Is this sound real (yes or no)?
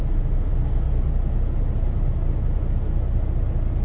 yes